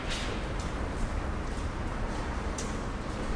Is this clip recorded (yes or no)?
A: yes